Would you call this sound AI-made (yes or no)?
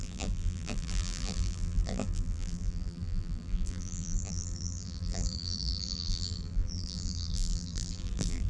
yes